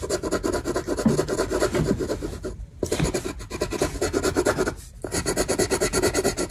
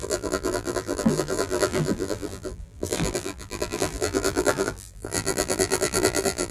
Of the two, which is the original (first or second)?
first